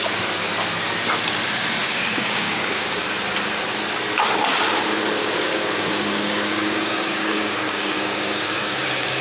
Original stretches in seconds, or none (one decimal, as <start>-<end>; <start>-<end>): 0.0-1.8; 3.0-5.2